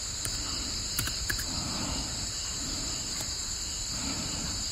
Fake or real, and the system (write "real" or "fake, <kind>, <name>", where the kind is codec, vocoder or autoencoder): fake, vocoder, BigVGAN v2